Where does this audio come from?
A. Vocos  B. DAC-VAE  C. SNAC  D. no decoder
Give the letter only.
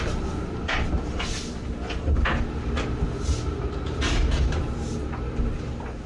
D